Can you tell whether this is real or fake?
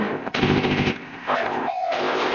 fake